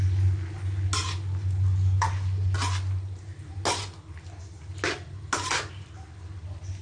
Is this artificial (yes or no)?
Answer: no